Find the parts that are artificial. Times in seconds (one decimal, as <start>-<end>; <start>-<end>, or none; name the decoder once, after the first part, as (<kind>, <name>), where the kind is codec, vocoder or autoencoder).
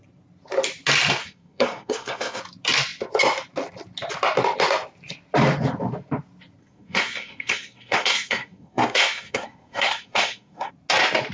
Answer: 1.2-2.4 (codec, SNAC); 6.6-10.7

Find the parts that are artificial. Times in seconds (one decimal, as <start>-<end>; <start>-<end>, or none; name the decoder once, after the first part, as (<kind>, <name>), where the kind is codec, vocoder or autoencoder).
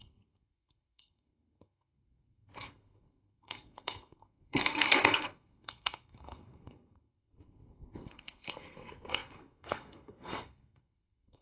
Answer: 0.0-11.4 (codec, SNAC)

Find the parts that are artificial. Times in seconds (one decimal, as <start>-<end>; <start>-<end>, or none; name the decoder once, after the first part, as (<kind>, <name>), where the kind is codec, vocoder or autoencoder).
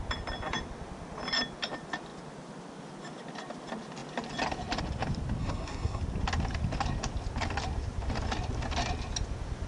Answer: 5.4-6.0 (codec, SNAC)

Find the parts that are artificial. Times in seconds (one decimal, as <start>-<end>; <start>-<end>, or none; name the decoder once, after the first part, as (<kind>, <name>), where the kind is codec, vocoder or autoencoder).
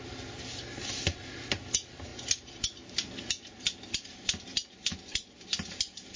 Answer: none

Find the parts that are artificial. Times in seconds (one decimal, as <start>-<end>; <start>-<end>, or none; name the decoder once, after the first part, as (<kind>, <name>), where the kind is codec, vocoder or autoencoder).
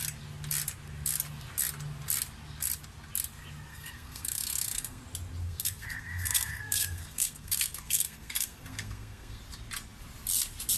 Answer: 3.7-5.0 (codec, SNAC); 5.4-9.4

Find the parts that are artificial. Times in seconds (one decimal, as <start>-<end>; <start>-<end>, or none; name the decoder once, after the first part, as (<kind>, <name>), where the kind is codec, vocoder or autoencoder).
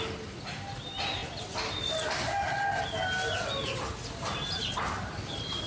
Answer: none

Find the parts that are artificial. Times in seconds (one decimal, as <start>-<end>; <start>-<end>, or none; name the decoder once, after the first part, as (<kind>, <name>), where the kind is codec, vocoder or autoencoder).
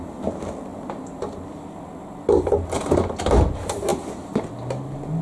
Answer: none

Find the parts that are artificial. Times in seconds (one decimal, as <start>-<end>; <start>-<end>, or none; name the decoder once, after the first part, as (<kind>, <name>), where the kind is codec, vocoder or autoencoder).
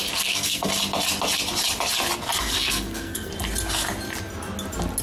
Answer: 0.0-0.7 (codec, SNAC); 2.4-3.3